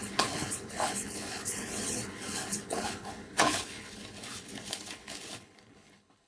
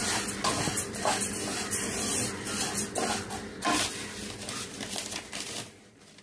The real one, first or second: second